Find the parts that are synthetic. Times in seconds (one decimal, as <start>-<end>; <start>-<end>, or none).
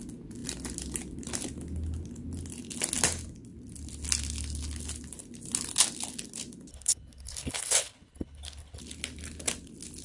6.7-8.8